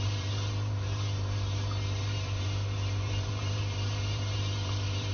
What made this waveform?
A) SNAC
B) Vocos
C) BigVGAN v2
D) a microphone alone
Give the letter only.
C